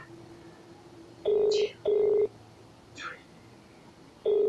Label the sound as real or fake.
real